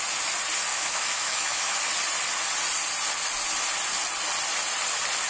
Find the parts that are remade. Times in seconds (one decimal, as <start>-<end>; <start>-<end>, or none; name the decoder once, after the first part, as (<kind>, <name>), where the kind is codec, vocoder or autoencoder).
0.7-1.8 (autoencoder, DAC-VAE)